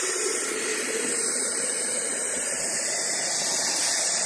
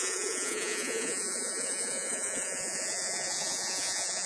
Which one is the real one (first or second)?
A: first